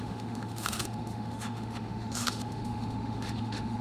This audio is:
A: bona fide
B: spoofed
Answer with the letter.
B